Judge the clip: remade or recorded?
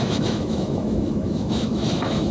remade